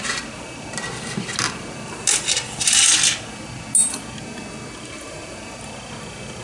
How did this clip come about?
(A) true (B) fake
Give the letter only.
A